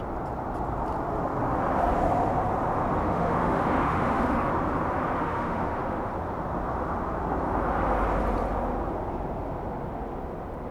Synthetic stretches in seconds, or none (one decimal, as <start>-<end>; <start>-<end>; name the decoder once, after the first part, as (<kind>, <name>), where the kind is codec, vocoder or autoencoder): 3.0-4.5 (autoencoder, DAC-VAE); 5.2-6.1